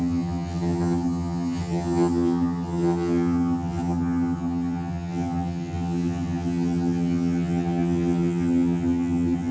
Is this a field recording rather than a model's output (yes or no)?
no